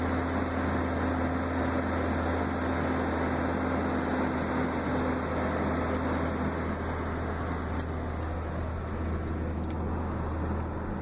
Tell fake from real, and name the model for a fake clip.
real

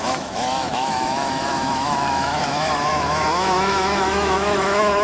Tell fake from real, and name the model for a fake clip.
fake, autoencoder, DAC-VAE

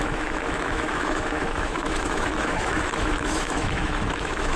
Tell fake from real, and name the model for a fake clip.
fake, autoencoder, DAC-VAE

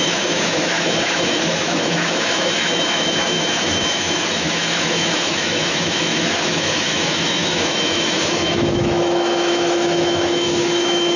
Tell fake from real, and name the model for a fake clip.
fake, autoencoder, DAC-VAE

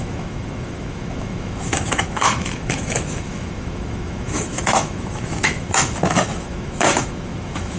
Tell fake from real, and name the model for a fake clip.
fake, autoencoder, DAC-VAE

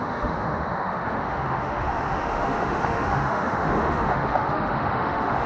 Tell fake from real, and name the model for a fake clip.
fake, autoencoder, DAC-VAE